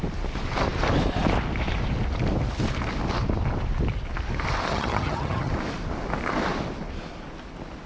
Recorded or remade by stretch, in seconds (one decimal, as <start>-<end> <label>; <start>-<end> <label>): 0.0-4.7 recorded; 4.7-5.5 remade; 5.5-7.9 recorded